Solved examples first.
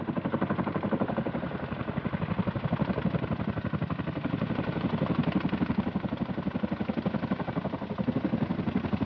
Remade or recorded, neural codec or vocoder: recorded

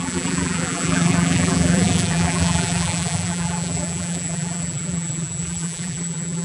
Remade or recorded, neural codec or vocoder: remade, vocoder, BigVGAN v2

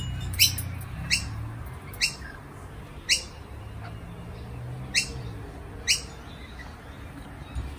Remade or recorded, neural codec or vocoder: recorded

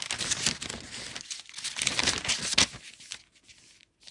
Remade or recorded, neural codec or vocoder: recorded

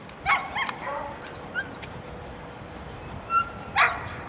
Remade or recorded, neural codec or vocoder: remade, vocoder, BigVGAN v2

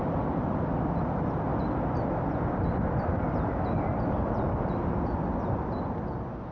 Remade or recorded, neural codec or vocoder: recorded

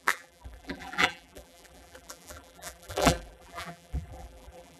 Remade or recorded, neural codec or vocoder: remade, vocoder, BigVGAN v2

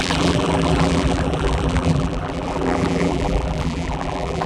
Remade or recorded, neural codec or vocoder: remade, vocoder, BigVGAN v2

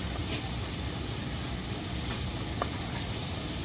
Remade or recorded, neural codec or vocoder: recorded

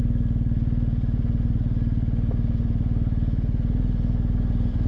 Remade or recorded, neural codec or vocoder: recorded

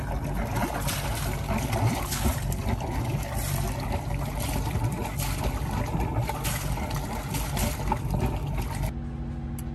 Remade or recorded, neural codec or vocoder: recorded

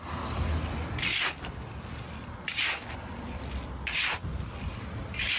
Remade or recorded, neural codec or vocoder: recorded